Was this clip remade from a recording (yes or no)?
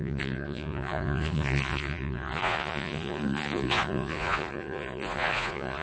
yes